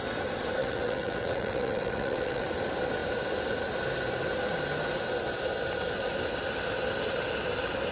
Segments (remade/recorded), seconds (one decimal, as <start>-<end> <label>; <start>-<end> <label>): 0.0-0.6 recorded; 0.6-2.5 remade; 2.5-7.9 recorded